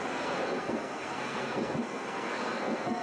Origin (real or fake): fake